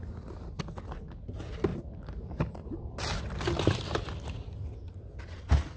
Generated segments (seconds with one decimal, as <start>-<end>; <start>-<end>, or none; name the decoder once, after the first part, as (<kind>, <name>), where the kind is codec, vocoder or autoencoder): none